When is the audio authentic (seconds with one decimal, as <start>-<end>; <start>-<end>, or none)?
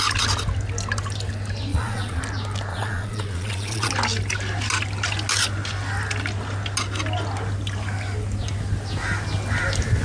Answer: 0.0-1.7; 2.2-2.7; 3.9-10.0